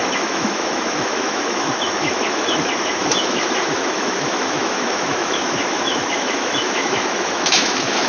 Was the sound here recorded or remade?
remade